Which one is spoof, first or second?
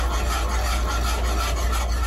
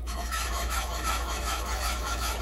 second